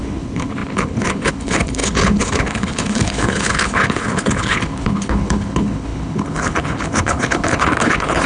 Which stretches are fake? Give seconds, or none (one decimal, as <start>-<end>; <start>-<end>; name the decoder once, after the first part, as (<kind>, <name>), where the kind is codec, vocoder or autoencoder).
0.0-8.3 (codec, HILCodec)